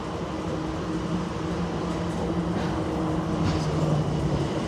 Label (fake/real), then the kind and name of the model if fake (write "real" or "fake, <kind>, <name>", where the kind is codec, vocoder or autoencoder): real